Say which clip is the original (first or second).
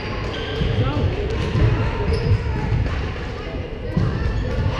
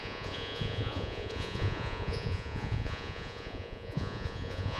first